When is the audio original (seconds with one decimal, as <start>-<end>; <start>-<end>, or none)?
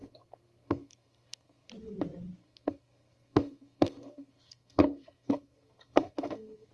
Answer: 1.7-2.4